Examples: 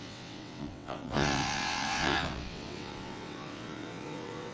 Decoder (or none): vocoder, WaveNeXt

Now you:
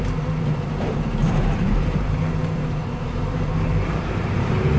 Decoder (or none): vocoder, BigVGAN v2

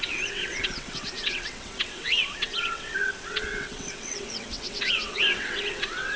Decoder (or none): vocoder, WaveNeXt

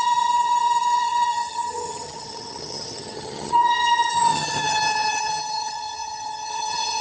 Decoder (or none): vocoder, HiFi-GAN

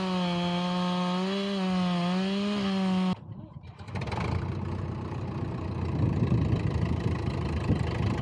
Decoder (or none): none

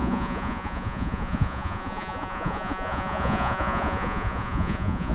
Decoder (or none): vocoder, Vocos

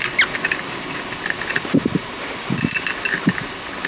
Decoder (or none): none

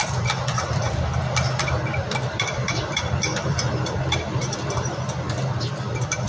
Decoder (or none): vocoder, BigVGAN v2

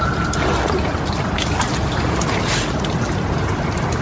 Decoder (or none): none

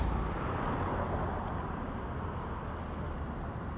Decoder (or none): none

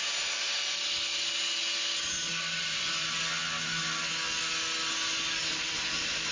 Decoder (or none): none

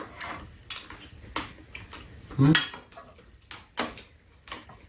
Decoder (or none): none